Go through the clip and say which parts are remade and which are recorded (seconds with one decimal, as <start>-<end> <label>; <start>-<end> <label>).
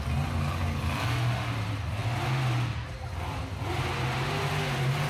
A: 0.0-5.1 recorded